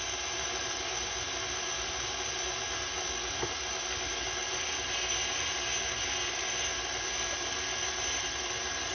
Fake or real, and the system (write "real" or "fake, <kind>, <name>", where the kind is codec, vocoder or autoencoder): real